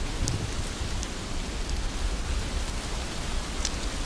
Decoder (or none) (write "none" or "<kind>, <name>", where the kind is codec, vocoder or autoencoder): none